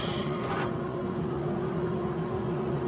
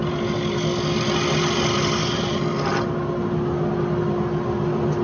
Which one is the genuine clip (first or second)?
second